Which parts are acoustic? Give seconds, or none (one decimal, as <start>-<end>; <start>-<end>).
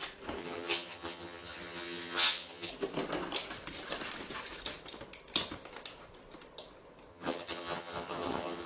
0.0-0.4; 2.7-7.1